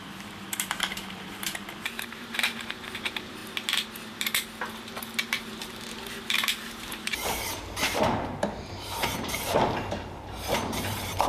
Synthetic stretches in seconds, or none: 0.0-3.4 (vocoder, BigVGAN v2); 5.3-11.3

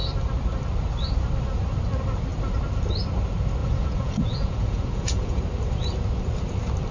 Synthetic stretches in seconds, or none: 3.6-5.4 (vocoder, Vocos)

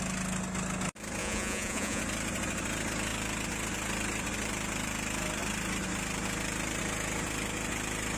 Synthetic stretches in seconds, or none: 1.2-2.0 (vocoder, Vocos)

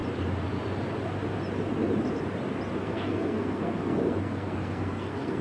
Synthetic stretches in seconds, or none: 2.8-5.4 (codec, SNAC)